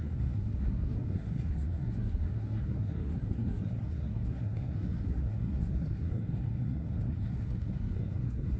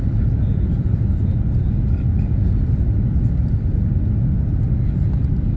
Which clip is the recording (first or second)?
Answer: second